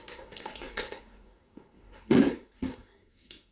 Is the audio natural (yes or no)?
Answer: no